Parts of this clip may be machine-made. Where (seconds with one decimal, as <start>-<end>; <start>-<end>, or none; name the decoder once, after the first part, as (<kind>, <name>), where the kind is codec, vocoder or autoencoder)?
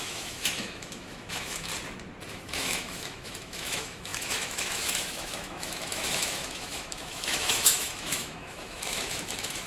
0.0-1.7 (autoencoder, DAC-VAE); 2.3-9.7